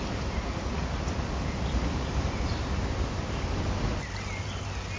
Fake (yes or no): no